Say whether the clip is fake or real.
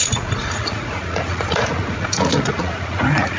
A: fake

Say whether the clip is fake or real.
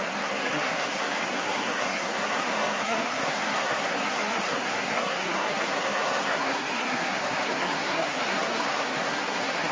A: fake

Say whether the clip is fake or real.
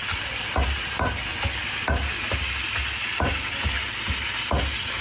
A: real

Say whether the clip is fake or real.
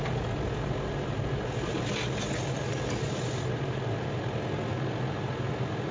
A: real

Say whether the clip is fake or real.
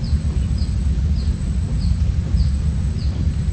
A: real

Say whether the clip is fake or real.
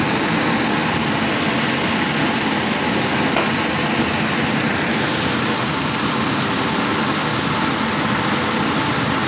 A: real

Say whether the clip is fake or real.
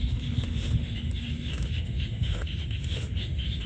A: fake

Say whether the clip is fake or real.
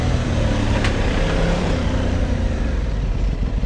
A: fake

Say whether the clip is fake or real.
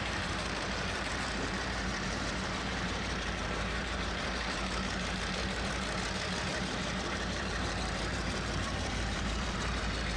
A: fake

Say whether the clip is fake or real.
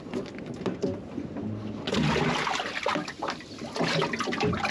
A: real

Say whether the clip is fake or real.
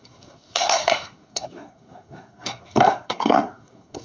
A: fake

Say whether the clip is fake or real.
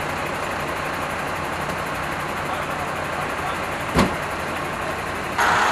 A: real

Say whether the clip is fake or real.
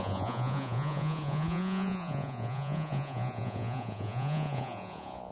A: fake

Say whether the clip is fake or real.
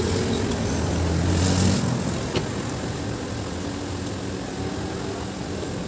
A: real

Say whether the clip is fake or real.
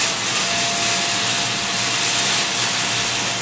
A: real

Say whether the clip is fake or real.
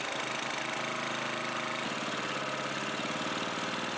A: real